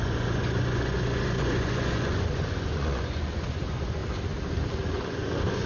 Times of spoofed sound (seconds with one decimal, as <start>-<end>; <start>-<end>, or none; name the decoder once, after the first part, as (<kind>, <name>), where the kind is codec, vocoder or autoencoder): 0.0-4.0 (vocoder, Vocos); 4.9-5.7